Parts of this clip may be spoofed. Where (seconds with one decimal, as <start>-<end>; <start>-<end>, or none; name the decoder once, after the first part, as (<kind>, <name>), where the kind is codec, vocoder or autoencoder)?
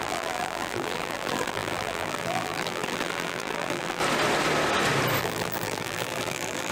0.0-4.0 (vocoder, BigVGAN v2); 5.2-6.7